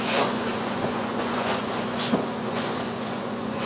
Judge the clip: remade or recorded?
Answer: remade